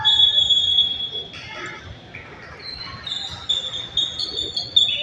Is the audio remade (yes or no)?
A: no